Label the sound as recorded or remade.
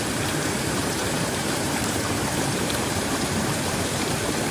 remade